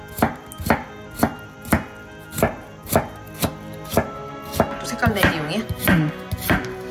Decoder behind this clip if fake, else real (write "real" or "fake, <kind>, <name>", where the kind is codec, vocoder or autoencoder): real